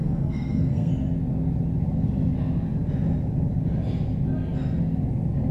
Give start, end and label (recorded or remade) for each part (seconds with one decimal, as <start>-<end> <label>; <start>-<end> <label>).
0.0-0.9 remade; 0.9-5.5 recorded